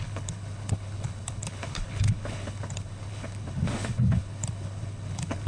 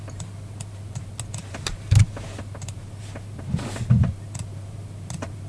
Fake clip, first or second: first